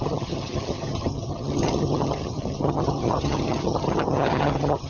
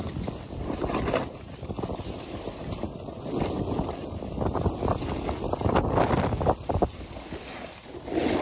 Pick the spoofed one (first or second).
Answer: first